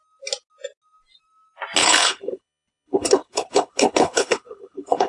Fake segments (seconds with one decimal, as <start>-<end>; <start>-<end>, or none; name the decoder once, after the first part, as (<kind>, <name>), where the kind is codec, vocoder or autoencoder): 1.8-5.1 (codec, HILCodec)